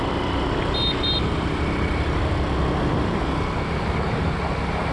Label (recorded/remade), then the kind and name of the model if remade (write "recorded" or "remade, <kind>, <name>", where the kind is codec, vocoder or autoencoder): recorded